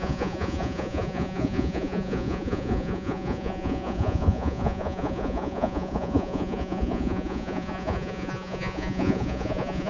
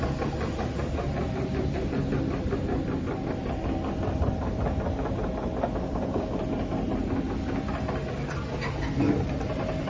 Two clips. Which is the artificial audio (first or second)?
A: first